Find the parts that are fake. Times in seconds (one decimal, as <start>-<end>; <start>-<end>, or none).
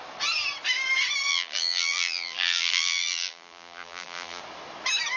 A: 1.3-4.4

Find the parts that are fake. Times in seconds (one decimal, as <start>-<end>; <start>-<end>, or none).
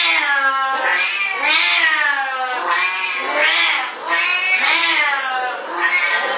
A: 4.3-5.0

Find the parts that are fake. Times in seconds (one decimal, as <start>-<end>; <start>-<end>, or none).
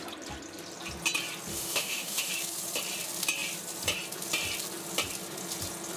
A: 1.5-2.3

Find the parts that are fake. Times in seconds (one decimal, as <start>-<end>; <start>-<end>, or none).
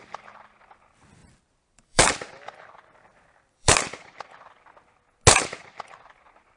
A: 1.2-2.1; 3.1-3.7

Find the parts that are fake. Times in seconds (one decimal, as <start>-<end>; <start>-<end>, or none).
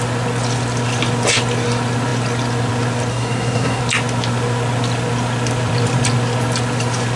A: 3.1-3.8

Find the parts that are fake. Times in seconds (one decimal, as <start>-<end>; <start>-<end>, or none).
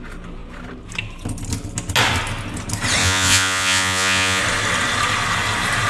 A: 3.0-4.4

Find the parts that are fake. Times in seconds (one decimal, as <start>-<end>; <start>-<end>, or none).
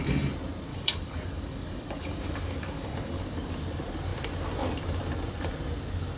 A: 0.7-3.5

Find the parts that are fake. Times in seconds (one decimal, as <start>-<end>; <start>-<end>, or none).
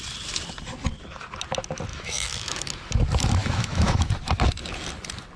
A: 1.9-2.7; 3.4-4.1